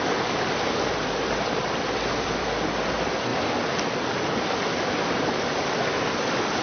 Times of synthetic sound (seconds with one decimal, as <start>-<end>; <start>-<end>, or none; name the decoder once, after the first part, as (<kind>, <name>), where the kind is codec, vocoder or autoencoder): none

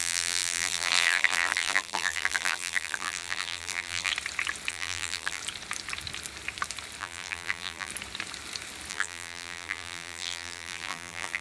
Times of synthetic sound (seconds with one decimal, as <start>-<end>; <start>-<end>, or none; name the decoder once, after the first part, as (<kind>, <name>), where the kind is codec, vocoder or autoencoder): 0.0-4.1 (vocoder, BigVGAN v2); 4.7-5.4; 7.0-7.9; 8.9-11.4

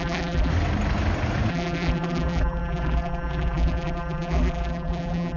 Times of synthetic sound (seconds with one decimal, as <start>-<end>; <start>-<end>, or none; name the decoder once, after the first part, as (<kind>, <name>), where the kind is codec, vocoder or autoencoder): 0.0-0.5 (vocoder, BigVGAN v2); 1.5-5.4

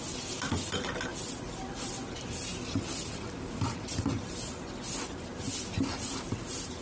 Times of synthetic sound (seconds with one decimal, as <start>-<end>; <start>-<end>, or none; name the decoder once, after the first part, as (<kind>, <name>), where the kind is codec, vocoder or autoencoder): 1.1-4.4 (vocoder, BigVGAN v2); 5.3-6.8